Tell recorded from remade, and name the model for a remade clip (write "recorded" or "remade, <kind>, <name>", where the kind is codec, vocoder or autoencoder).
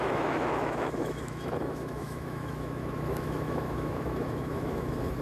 remade, autoencoder, DAC-VAE